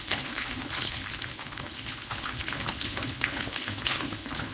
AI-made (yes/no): yes